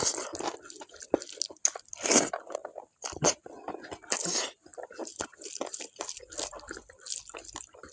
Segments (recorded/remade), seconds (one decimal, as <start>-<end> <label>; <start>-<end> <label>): 0.0-2.6 recorded; 2.6-3.5 remade; 3.5-4.7 recorded; 4.7-7.1 remade; 7.1-7.9 recorded